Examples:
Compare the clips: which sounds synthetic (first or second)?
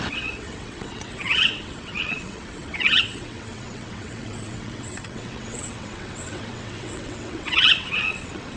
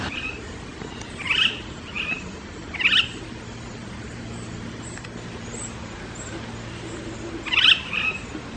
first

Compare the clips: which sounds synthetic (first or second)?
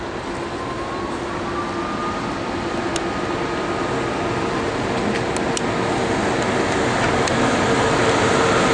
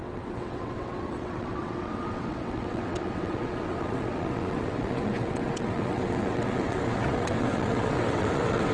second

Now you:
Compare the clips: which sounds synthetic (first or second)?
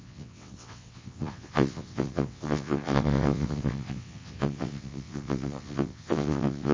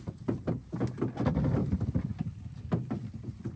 first